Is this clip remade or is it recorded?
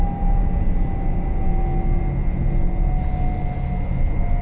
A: recorded